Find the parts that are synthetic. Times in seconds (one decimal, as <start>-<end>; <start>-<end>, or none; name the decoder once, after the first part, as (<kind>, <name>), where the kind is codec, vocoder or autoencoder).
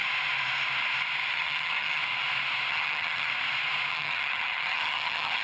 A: 1.3-2.0 (vocoder, HiFi-GAN); 2.7-3.3; 3.9-5.4